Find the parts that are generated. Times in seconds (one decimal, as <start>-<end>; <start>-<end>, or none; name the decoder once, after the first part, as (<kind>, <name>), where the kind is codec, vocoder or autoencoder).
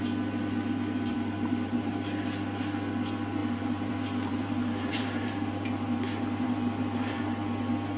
1.1-1.9 (vocoder, BigVGAN v2); 3.4-3.9; 4.3-7.2